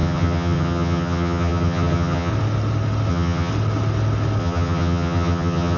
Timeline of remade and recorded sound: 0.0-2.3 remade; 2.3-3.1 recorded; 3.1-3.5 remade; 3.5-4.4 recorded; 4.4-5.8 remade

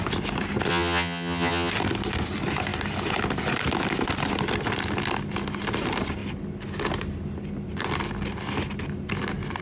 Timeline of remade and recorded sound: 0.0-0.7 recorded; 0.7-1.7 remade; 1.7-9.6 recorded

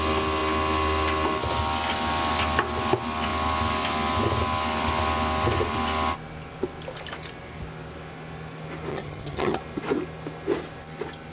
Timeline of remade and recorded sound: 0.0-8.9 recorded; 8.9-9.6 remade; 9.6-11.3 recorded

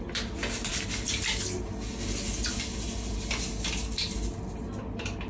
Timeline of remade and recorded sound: 0.0-5.3 recorded

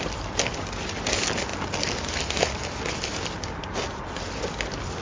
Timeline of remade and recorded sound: 0.0-5.0 recorded